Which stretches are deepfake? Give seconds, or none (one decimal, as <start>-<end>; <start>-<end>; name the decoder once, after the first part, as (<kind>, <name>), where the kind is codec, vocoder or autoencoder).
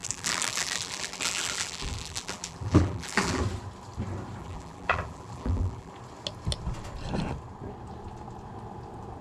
0.0-3.4 (vocoder, BigVGAN v2); 4.4-5.9